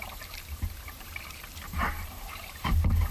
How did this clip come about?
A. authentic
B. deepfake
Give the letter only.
B